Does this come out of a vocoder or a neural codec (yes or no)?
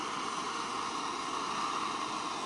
no